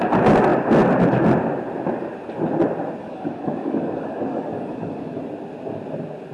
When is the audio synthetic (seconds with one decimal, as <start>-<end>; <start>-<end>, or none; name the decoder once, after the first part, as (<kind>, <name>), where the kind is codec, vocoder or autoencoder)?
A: 3.0-5.2 (codec, DAC)